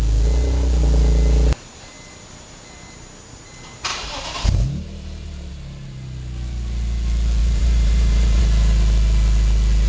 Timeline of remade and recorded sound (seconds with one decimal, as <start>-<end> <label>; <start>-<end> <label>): 0.0-3.9 recorded; 3.9-5.5 remade; 5.5-7.4 recorded; 7.4-8.4 remade; 8.4-9.9 recorded